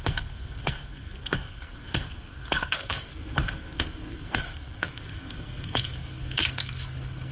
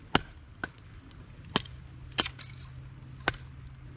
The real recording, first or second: second